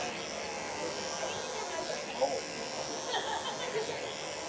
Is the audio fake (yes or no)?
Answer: no